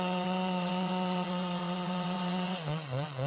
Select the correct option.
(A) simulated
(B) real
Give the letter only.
A